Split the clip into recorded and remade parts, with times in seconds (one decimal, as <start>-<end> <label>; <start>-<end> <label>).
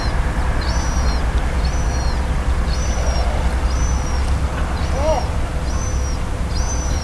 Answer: 0.0-7.0 recorded